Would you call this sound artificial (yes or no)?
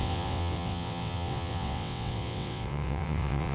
yes